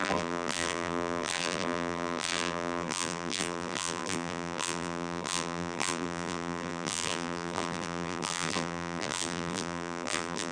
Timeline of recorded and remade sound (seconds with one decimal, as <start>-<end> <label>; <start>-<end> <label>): 0.0-10.5 remade